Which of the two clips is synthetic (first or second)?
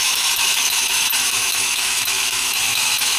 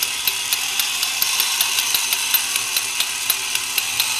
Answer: first